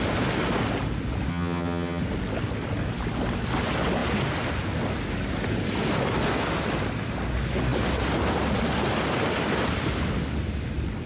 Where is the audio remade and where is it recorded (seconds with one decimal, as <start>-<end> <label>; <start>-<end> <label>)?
0.0-1.3 recorded; 1.3-2.0 remade; 2.0-11.1 recorded